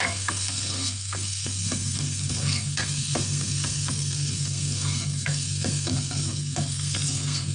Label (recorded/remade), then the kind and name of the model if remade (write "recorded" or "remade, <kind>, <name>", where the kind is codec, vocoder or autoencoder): remade, codec, SNAC